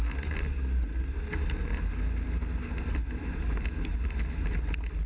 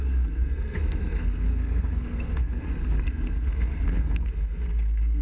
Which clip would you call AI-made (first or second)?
second